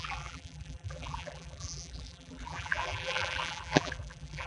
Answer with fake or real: fake